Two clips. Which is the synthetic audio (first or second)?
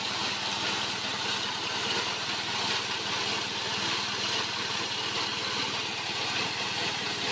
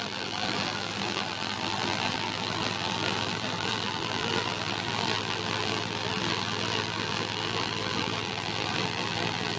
second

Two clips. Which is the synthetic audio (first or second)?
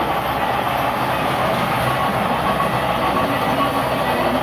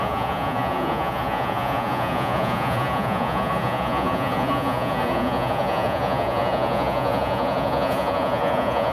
second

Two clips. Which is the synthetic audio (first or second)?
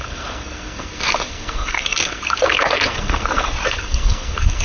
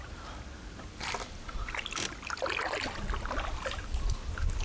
first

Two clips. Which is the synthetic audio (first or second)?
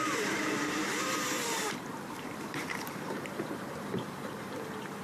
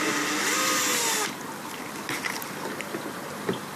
first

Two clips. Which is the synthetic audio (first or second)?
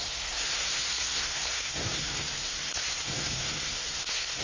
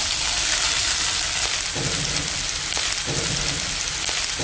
first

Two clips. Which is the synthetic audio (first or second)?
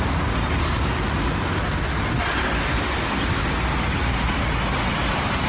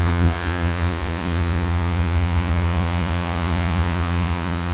second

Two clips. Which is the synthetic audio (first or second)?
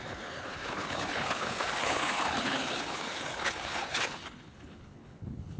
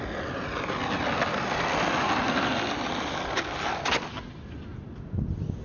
first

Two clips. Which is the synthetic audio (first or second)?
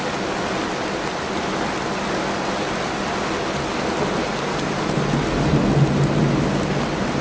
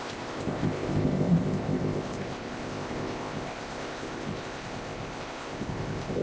second